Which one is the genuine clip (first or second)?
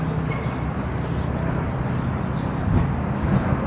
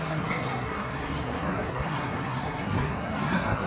first